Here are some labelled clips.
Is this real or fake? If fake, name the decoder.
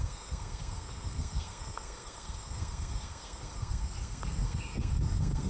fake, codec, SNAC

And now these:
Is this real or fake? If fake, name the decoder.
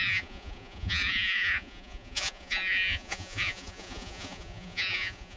fake, vocoder, Vocos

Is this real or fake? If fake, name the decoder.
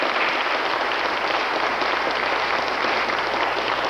real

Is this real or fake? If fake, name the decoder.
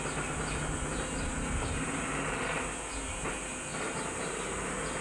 real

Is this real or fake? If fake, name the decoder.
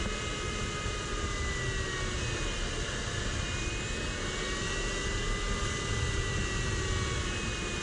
real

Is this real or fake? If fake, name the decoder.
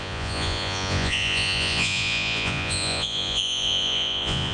fake, vocoder, Vocos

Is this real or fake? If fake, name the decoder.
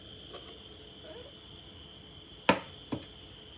real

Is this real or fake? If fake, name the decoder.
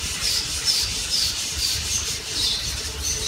real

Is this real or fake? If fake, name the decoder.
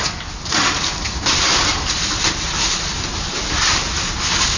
real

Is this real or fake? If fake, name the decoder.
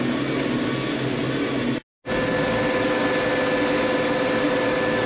real